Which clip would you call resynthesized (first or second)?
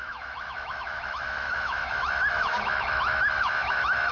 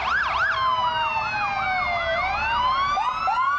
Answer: first